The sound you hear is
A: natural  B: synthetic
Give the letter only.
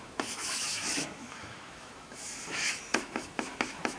B